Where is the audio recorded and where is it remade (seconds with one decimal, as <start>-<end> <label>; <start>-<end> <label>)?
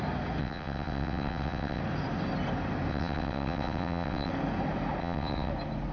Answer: 0.0-0.4 recorded; 0.4-1.8 remade; 1.8-2.9 recorded; 2.9-4.3 remade; 4.3-5.0 recorded; 5.0-5.5 remade; 5.5-5.9 recorded